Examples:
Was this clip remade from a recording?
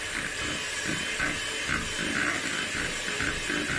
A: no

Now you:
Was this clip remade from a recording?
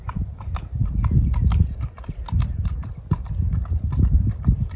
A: no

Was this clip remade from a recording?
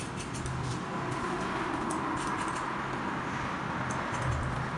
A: no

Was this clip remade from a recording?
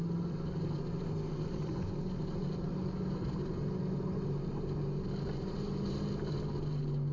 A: no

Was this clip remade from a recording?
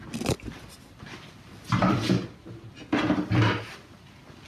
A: no